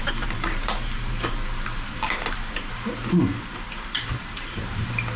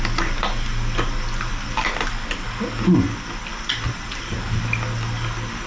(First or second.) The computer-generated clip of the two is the first